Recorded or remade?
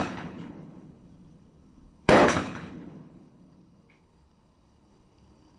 remade